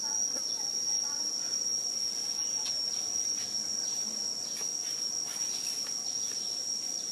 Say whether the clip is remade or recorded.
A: recorded